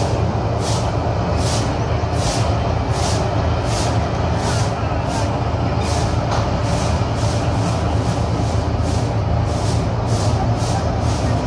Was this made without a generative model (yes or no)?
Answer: yes